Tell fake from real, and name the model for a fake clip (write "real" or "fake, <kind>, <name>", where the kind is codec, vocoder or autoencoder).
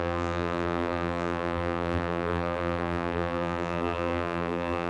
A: fake, vocoder, BigVGAN v2